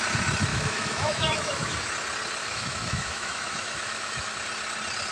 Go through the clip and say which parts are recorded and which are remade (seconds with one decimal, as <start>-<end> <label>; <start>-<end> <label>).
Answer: 0.0-0.5 recorded; 0.5-1.9 remade; 1.9-2.4 recorded; 2.4-4.3 remade; 4.3-5.1 recorded